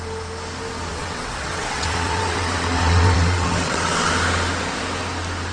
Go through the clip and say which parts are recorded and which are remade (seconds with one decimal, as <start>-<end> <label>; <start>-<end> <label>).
0.0-0.9 recorded; 0.9-4.1 remade; 4.1-5.5 recorded